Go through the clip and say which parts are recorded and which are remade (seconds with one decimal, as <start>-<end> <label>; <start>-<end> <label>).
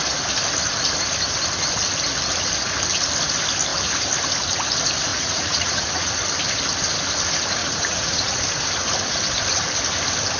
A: 0.0-5.1 recorded; 5.1-6.1 remade; 6.1-7.6 recorded; 7.6-8.4 remade; 8.4-10.4 recorded